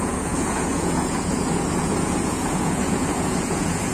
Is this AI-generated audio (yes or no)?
yes